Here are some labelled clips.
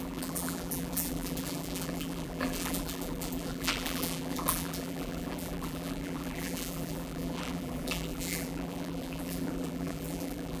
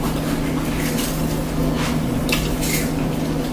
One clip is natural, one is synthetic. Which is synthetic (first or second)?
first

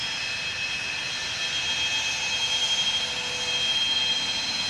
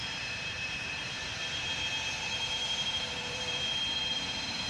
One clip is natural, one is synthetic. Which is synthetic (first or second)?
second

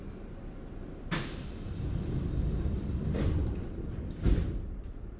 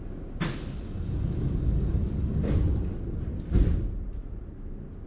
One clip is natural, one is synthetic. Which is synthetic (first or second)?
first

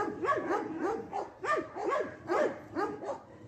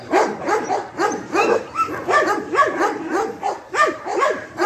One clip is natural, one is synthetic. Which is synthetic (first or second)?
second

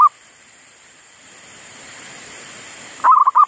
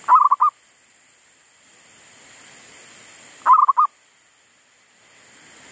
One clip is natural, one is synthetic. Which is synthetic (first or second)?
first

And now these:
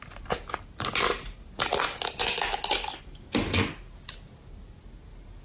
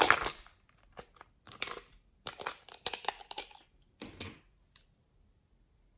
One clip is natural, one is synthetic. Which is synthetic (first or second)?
second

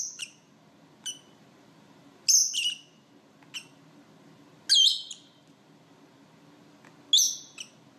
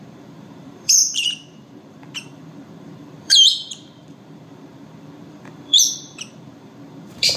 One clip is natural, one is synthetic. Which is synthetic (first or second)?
second